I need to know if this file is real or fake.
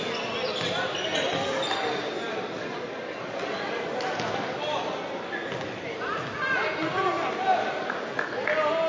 real